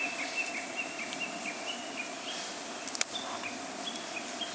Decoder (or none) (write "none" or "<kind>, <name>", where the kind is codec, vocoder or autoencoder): none